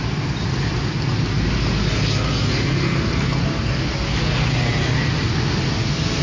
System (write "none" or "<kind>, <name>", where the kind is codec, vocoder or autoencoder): none